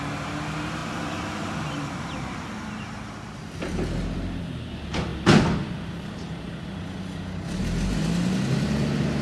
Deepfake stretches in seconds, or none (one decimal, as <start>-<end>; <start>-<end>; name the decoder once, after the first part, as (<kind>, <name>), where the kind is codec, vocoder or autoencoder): 0.8-4.4 (vocoder, BigVGAN v2); 5.1-5.9